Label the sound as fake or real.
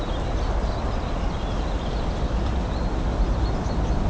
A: real